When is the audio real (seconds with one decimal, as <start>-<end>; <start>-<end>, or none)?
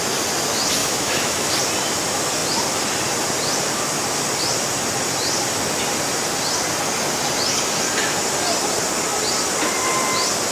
0.0-0.8; 1.5-10.5